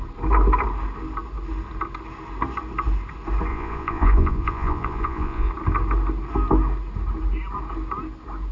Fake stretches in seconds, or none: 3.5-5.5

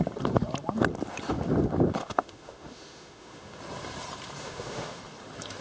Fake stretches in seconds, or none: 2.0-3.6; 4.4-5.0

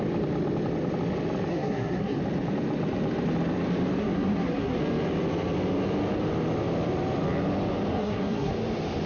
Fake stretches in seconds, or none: 1.5-2.2; 4.0-4.8; 7.9-8.5

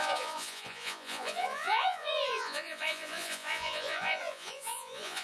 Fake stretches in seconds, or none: 0.0-5.2

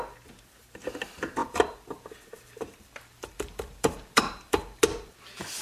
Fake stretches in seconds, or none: 1.4-4.8

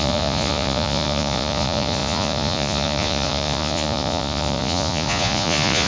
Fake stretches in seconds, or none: 0.0-5.9

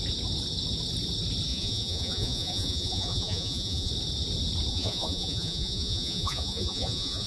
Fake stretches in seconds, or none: 1.5-3.9; 4.7-7.3